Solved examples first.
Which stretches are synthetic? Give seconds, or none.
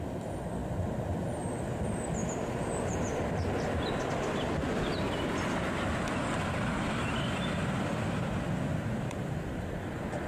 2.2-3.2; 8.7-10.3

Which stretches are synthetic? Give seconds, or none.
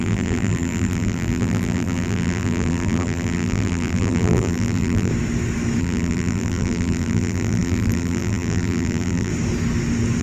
0.0-5.1; 5.8-9.3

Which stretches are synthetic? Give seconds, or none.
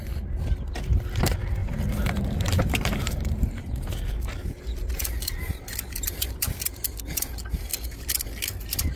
1.6-4.4